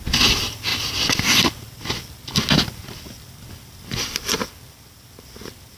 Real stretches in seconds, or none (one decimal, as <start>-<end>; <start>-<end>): 0.0-5.8